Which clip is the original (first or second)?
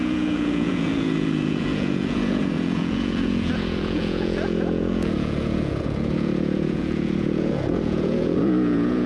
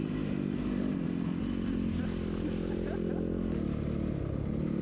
second